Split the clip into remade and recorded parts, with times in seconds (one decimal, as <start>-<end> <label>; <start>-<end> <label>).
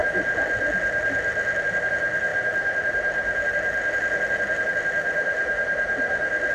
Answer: 0.0-6.5 recorded